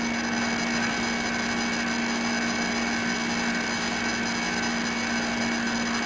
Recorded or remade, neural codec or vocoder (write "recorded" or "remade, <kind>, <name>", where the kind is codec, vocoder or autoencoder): recorded